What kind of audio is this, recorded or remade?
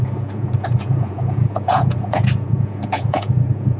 remade